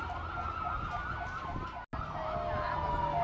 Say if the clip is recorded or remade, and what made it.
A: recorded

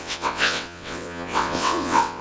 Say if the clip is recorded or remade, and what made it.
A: remade, vocoder, WaveNeXt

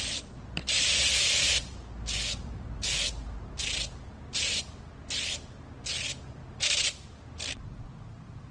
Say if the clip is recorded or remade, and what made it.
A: recorded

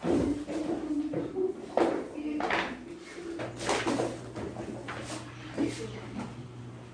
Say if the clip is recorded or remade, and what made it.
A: recorded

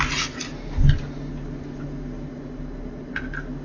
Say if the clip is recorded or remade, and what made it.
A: recorded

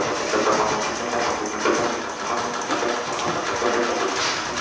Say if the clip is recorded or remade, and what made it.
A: recorded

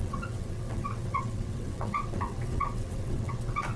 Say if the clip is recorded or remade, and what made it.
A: remade, vocoder, WaveNeXt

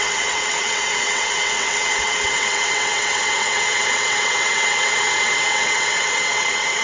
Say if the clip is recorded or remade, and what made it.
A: remade, vocoder, WaveNeXt